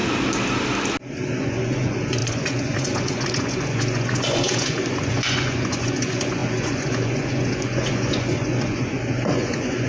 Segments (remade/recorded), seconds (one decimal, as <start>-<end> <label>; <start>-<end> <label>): 0.0-1.4 recorded; 1.4-9.9 remade